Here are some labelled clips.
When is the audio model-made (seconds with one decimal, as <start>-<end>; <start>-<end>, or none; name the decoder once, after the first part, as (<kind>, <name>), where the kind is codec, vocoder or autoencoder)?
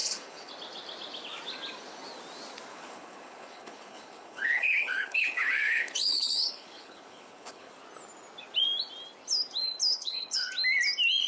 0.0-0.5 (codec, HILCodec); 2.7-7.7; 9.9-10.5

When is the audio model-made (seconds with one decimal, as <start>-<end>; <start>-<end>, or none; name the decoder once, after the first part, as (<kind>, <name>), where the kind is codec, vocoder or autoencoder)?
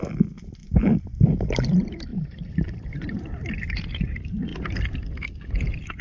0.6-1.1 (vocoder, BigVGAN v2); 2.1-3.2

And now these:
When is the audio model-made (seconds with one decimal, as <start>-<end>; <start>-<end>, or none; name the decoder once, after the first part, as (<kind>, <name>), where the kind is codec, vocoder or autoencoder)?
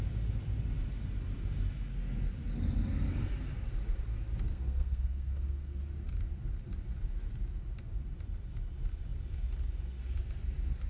4.5-5.8 (codec, SNAC)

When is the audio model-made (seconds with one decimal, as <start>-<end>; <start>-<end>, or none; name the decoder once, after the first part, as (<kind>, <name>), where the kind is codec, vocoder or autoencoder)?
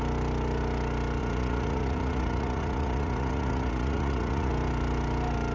1.2-4.5 (vocoder, Vocos)